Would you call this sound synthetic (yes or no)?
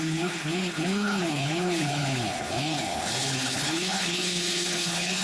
yes